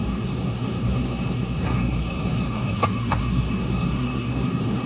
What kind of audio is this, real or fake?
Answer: fake